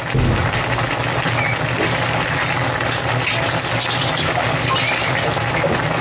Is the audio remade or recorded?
recorded